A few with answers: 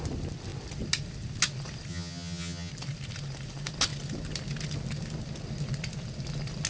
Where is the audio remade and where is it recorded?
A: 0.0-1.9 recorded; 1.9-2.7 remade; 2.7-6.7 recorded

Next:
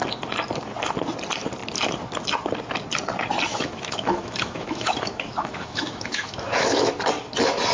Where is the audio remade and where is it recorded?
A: 0.0-3.5 recorded; 3.5-6.9 remade; 6.9-7.7 recorded

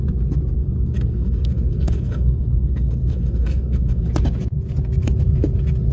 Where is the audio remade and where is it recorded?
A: 0.0-0.6 recorded; 0.6-4.1 remade; 4.1-5.9 recorded

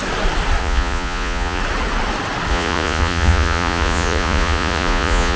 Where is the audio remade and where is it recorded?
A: 0.0-0.6 recorded; 0.6-1.6 remade; 1.6-2.5 recorded; 2.5-5.4 remade

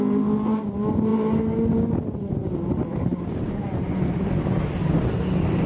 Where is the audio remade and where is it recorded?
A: 0.0-5.7 recorded

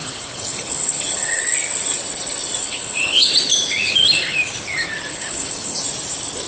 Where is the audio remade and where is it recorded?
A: 0.0-1.4 remade; 1.4-2.6 recorded; 2.6-3.3 remade; 3.3-5.1 recorded; 5.1-5.8 remade; 5.8-6.5 recorded